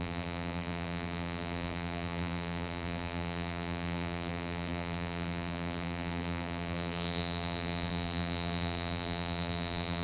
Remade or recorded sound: remade